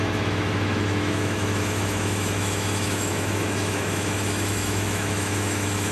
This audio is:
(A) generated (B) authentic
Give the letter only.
A